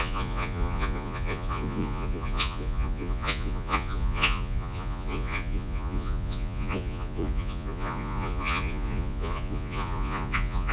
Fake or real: fake